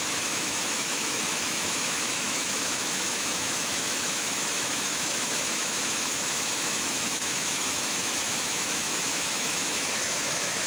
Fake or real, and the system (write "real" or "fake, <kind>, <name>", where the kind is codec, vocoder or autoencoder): fake, autoencoder, DAC-VAE